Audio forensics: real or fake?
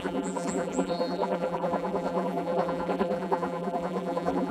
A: fake